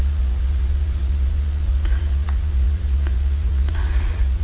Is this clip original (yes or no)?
no